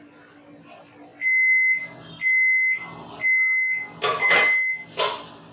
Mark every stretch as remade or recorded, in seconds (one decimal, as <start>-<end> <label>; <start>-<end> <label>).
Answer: 0.0-5.5 recorded